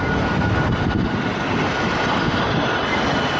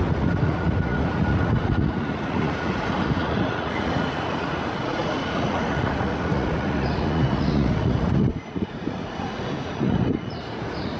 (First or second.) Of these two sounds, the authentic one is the first